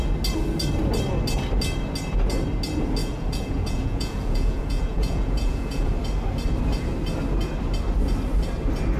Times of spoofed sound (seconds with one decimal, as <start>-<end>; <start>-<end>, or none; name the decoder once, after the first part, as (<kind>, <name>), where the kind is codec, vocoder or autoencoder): 3.0-5.9 (vocoder, Vocos)